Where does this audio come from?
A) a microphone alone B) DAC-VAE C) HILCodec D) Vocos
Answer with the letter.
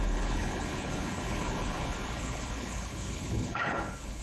C